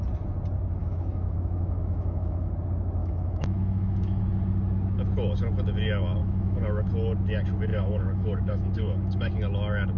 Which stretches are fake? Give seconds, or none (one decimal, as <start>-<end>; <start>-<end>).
0.8-2.5; 3.0-4.2; 6.2-6.9; 7.7-9.3